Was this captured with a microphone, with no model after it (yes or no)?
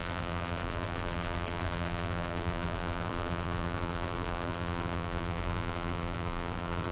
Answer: no